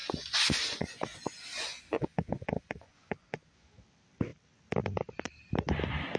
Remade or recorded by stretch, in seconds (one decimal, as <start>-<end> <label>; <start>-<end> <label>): 0.0-3.7 remade; 3.7-6.2 recorded